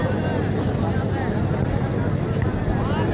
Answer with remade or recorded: recorded